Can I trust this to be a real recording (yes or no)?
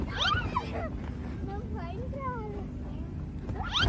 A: yes